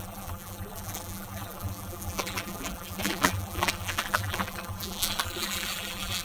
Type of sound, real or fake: fake